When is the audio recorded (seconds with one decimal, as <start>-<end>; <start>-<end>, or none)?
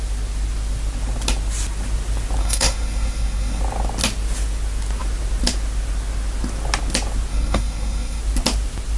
0.0-2.4; 3.6-7.3; 8.2-9.0